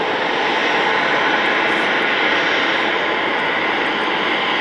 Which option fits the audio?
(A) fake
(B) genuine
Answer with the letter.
B